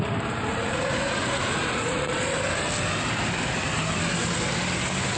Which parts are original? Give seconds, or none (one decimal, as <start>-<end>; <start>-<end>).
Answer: 0.0-0.5; 2.2-5.2